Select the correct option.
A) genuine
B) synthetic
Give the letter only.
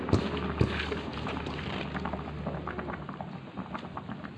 A